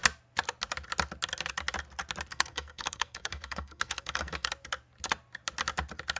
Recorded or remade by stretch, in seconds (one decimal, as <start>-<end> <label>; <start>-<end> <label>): 0.0-2.3 recorded; 2.3-4.5 remade; 4.5-6.2 recorded